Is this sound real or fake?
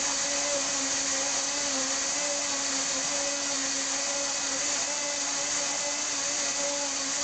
real